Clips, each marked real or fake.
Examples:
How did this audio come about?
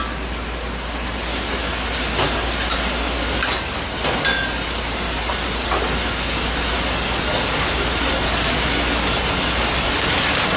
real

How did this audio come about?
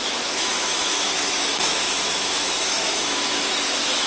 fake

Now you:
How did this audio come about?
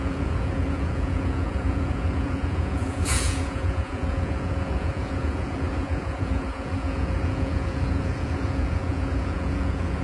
fake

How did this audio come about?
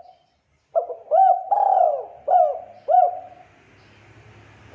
real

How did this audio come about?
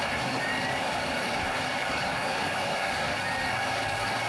fake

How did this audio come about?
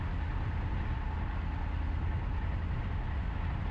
real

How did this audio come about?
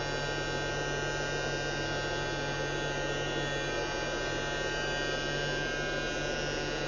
real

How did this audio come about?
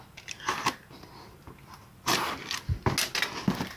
real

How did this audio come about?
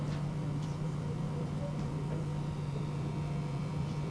fake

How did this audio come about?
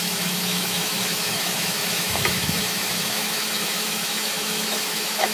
fake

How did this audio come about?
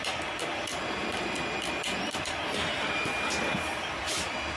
fake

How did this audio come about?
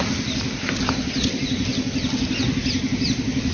real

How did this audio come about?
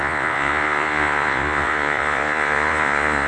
fake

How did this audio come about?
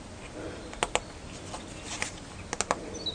real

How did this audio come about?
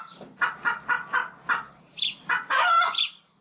real